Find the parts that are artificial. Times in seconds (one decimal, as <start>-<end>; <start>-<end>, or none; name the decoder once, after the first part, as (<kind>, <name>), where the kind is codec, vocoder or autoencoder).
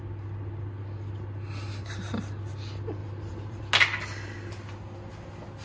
3.0-3.6 (vocoder, BigVGAN v2)